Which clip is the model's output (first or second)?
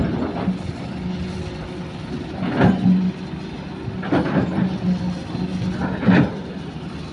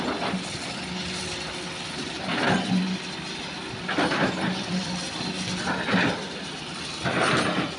second